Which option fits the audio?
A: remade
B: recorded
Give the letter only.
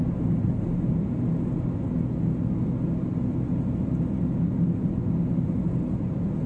B